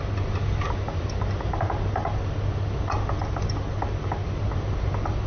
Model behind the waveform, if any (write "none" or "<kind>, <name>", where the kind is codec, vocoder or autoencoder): none